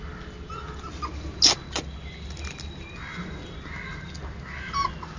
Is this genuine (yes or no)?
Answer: yes